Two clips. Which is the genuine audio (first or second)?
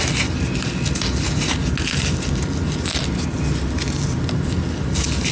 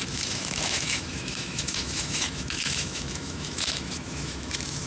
first